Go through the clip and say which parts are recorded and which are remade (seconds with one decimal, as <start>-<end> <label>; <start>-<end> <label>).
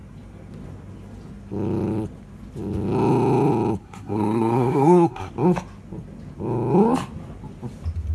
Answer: 0.0-3.8 recorded; 3.8-5.3 remade; 5.3-8.1 recorded